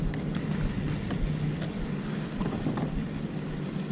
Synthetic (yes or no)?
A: no